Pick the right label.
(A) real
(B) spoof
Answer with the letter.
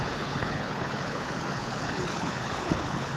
B